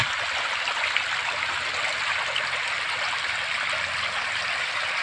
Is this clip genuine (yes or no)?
yes